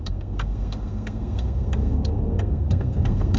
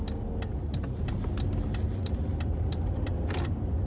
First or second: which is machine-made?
first